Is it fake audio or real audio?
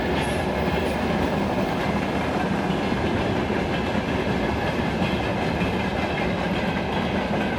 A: real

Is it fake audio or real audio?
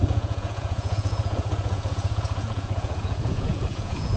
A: fake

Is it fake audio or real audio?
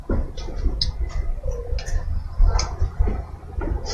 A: real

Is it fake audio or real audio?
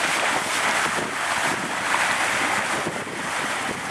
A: real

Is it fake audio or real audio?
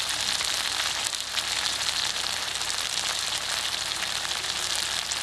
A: real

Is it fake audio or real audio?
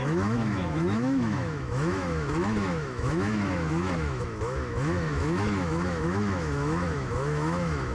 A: fake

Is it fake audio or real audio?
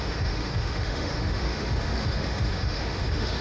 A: fake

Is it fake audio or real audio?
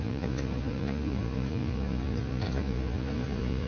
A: fake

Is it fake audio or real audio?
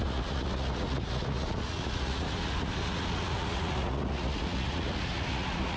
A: fake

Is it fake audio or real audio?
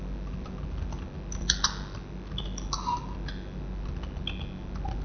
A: real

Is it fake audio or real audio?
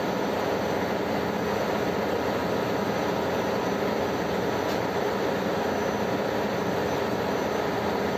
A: real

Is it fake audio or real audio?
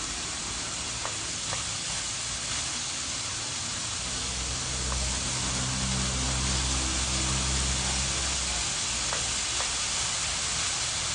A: real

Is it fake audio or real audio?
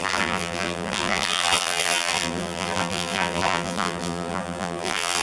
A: fake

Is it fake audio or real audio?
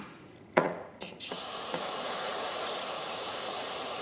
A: fake